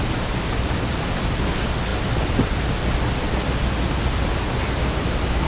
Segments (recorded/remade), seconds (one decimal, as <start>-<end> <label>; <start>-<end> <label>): 0.0-5.5 recorded